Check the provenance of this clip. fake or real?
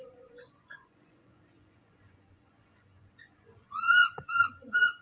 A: fake